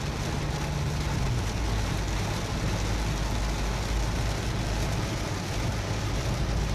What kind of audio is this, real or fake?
real